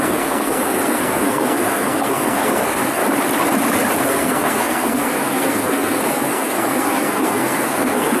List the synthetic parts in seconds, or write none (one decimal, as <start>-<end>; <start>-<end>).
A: 0.0-3.0; 4.0-8.2